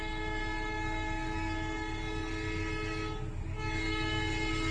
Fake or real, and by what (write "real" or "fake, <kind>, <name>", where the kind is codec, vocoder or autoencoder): fake, codec, DAC